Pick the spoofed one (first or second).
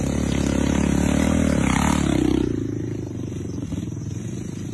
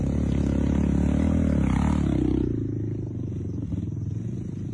first